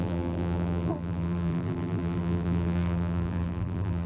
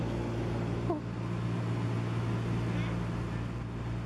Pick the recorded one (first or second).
second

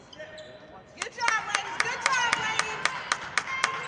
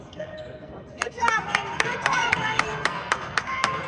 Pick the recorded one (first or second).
first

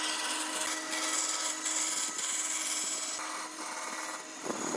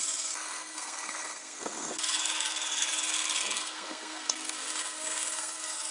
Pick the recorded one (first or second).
first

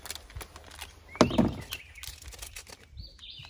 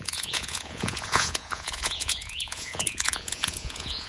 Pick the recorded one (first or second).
first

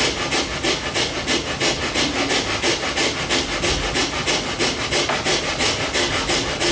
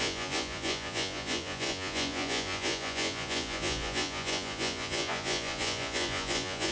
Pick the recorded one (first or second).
first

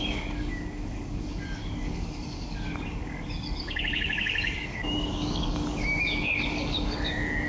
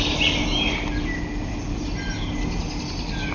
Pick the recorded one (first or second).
second